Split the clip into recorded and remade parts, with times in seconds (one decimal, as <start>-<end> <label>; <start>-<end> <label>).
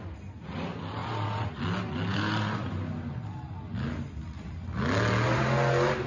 0.0-1.0 recorded; 1.0-1.6 remade; 1.6-2.1 recorded; 2.1-2.7 remade; 2.7-6.1 recorded